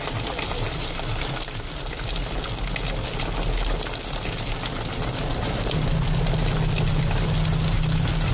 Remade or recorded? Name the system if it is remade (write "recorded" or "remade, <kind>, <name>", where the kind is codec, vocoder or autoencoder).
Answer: recorded